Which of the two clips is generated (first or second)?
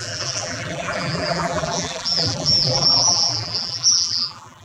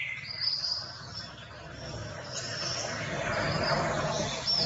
first